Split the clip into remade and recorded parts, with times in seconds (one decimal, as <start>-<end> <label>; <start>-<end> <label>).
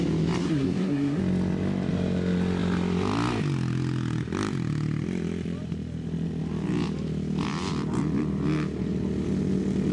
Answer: 0.0-0.4 recorded; 0.4-1.2 remade; 1.2-9.9 recorded